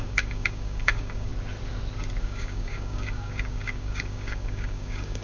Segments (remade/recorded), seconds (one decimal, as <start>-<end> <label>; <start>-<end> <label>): 0.0-1.3 remade; 1.3-2.2 recorded; 2.2-5.2 remade